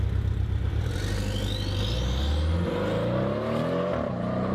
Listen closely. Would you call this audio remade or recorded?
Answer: recorded